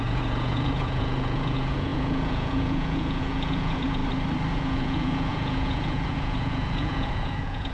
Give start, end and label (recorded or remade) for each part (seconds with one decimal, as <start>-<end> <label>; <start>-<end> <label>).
0.0-4.0 remade; 4.0-4.5 recorded; 4.5-7.7 remade